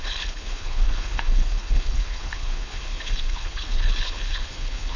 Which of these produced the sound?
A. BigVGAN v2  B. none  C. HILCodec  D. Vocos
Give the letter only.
C